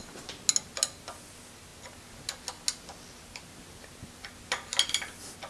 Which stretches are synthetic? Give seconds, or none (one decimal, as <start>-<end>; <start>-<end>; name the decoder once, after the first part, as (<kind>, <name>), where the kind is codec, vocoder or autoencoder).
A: none